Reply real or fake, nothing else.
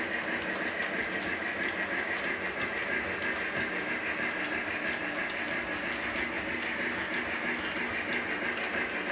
real